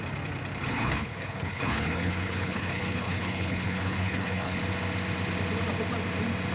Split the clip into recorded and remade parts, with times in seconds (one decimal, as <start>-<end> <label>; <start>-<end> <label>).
0.0-0.7 recorded; 0.7-4.6 remade; 4.6-6.5 recorded